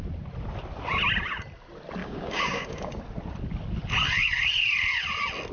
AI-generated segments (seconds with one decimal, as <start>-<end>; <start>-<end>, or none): 2.0-2.9